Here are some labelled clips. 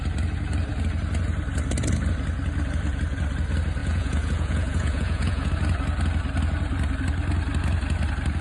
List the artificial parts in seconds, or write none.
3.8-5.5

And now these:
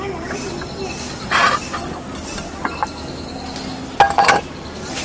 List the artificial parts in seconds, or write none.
none

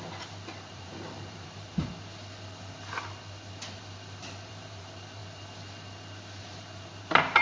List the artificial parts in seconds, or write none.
0.0-2.1; 4.5-5.2; 6.4-7.4

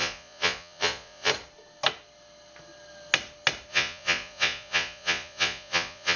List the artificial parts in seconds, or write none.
0.0-1.3; 3.7-6.2

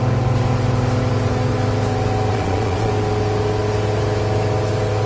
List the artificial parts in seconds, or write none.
2.3-2.9

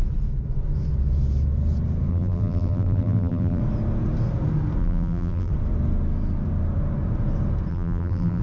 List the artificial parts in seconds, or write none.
2.1-3.6; 4.8-5.5; 7.7-8.4